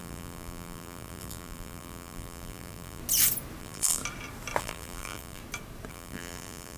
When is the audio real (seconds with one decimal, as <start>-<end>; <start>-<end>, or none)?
3.0-3.6; 4.0-4.6; 5.4-5.9

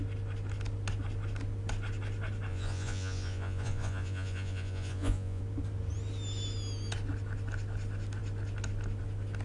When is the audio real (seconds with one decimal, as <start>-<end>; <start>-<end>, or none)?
0.0-2.5; 5.4-9.4

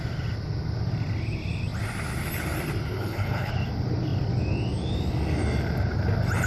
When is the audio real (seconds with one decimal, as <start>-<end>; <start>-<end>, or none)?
0.0-3.0; 3.5-6.5

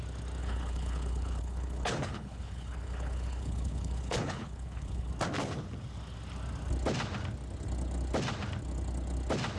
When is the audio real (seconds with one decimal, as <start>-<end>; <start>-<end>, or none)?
0.0-0.4; 5.1-9.6

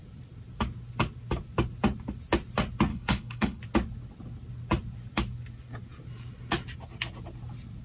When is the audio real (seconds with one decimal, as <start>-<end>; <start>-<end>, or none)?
0.0-2.9; 3.6-7.8

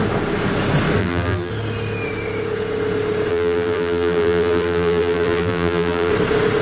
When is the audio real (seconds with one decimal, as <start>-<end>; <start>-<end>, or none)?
0.0-1.0; 1.5-3.3; 6.1-6.6